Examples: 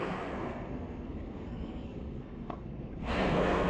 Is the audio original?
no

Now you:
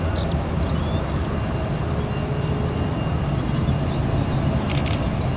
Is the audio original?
yes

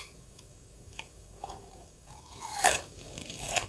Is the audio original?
no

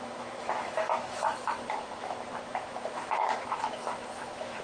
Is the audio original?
no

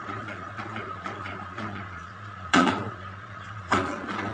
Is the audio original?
no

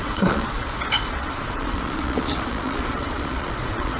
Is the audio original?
no